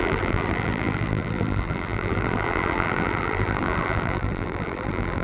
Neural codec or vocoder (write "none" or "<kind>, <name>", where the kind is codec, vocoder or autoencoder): vocoder, BigVGAN v2